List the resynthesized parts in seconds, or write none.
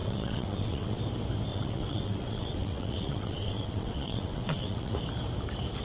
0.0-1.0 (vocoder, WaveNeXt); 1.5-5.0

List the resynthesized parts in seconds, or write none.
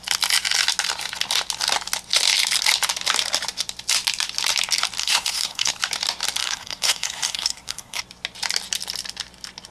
5.0-5.7 (codec, SNAC); 6.4-8.0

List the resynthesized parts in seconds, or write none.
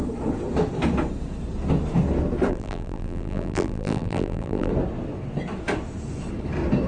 2.5-4.7 (vocoder, BigVGAN v2)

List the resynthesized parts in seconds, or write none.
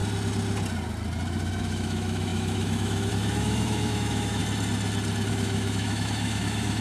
1.6-4.4 (autoencoder, DAC-VAE); 5.3-6.8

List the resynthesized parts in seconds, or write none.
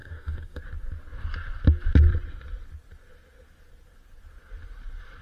0.0-0.6 (codec, DAC)